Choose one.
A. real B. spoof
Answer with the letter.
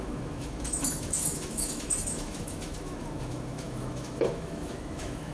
B